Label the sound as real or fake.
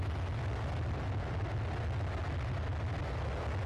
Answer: real